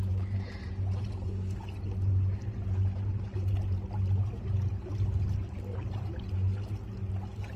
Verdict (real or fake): real